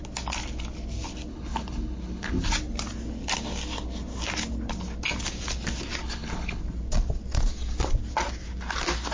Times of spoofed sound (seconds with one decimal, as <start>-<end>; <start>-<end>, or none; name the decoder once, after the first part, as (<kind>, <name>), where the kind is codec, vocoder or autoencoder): 1.3-2.4 (codec, HILCodec); 6.0-6.6